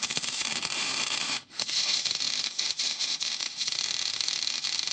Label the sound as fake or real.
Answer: fake